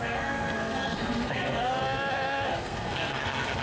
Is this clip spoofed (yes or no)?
yes